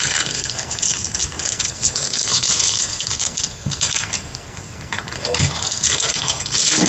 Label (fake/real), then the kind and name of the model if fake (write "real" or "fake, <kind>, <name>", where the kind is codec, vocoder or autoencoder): fake, codec, SNAC